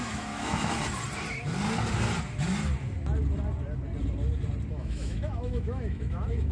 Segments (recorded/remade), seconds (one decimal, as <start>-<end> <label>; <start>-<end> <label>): 0.0-0.8 remade; 0.8-4.7 recorded; 4.7-6.5 remade